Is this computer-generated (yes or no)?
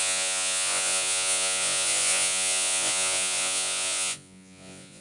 yes